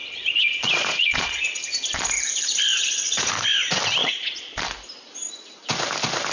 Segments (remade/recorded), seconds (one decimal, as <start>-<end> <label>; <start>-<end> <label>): 0.0-1.6 remade; 1.6-2.7 recorded; 2.7-3.3 remade; 3.3-4.0 recorded; 4.0-4.6 remade; 4.6-6.3 recorded